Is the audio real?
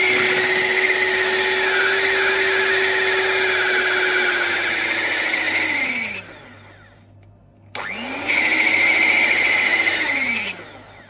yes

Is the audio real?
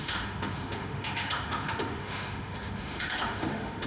no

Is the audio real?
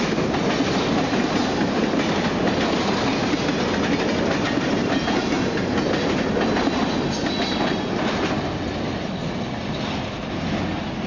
yes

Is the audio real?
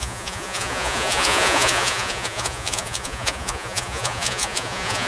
no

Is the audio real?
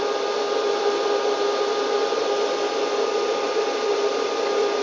yes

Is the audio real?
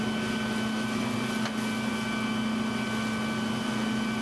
yes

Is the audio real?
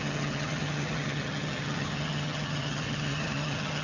no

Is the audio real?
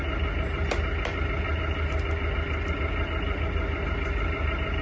yes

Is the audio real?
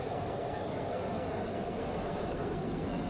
no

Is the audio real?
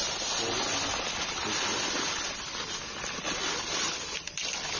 yes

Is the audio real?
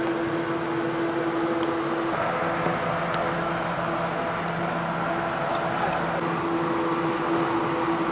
yes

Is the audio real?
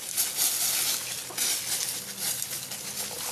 yes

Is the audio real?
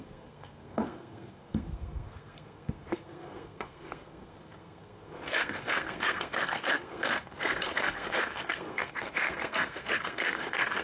no